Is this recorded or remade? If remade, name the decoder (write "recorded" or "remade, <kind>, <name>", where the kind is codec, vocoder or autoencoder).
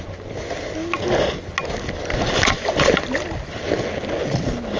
recorded